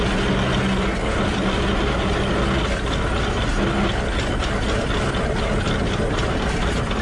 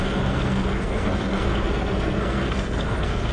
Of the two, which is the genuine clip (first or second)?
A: first